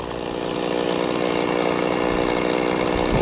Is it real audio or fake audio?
real